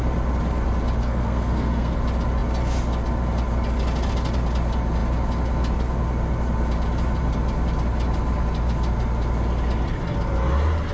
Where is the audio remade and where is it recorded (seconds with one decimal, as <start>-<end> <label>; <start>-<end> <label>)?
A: 0.0-1.0 recorded; 1.0-2.0 remade; 2.0-10.9 recorded